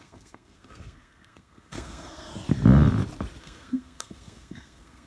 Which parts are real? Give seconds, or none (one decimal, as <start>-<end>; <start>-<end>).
2.3-3.4